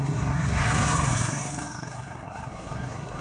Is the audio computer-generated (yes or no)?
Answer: yes